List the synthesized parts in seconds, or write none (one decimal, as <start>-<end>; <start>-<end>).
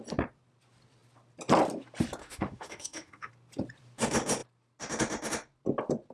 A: 2.2-3.3